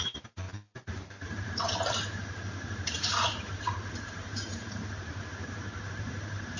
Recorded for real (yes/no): no